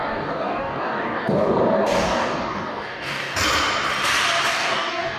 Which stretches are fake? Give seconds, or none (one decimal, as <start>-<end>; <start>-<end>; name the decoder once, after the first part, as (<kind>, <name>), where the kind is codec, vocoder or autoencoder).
0.0-3.4 (codec, DAC); 4.5-5.2